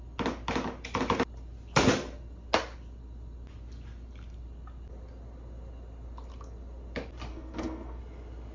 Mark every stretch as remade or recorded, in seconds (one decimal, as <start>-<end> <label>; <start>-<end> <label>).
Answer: 0.0-7.3 recorded; 7.3-8.0 remade; 8.0-8.5 recorded